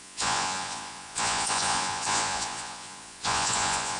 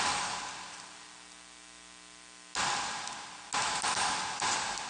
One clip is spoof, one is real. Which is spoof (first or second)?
first